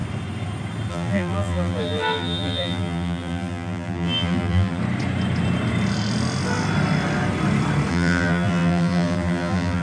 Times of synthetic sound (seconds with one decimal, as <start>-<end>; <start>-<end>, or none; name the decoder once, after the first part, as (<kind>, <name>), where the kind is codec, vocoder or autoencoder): 0.9-4.8 (vocoder, BigVGAN v2); 7.9-9.8